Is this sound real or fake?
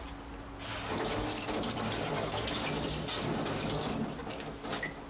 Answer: real